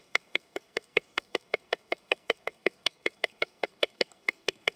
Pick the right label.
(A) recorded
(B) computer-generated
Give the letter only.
B